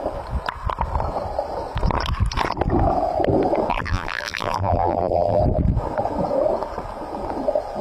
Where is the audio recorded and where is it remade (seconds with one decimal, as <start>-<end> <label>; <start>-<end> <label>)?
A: 0.0-3.7 recorded; 3.7-5.4 remade; 5.4-7.8 recorded